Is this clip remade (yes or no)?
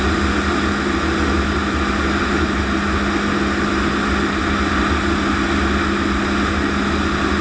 no